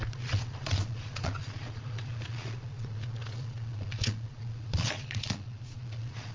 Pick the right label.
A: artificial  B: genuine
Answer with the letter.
A